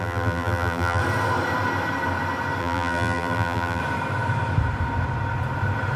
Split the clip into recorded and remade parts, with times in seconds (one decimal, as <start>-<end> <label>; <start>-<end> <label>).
0.0-1.0 remade; 1.0-2.6 recorded; 2.6-3.8 remade; 3.8-6.0 recorded